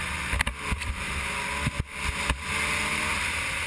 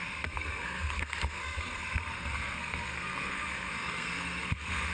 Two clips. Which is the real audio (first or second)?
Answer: first